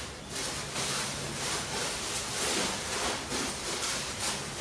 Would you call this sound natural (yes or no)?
no